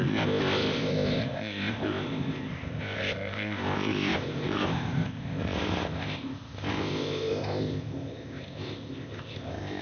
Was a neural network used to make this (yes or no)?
yes